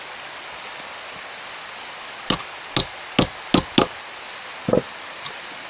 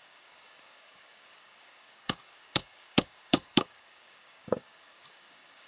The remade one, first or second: second